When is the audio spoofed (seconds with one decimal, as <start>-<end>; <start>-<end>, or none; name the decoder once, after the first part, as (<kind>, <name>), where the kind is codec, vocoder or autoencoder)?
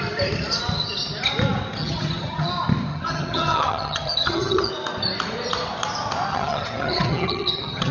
1.8-2.5 (vocoder, HiFi-GAN); 2.9-4.7; 6.3-7.9